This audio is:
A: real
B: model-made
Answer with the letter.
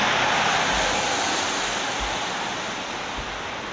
A